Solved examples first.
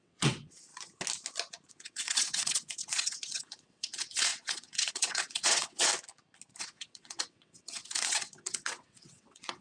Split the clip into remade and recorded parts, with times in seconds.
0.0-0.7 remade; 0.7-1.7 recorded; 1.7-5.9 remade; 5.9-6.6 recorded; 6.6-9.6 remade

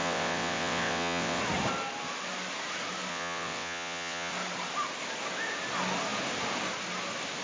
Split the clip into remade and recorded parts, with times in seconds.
0.0-1.4 remade; 1.4-3.1 recorded; 3.1-4.3 remade; 4.3-7.4 recorded

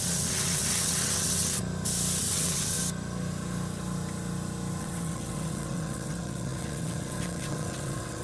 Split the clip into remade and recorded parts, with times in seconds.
0.0-1.6 remade; 1.6-2.2 recorded; 2.2-2.8 remade; 2.8-4.8 recorded; 4.8-8.2 remade

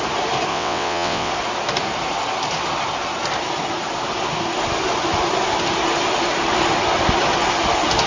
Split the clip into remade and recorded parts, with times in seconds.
0.0-0.5 recorded; 0.5-1.3 remade; 1.3-8.1 recorded

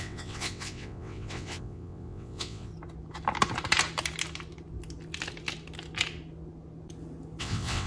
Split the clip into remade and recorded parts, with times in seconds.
0.0-2.7 remade; 2.7-7.4 recorded; 7.4-7.9 remade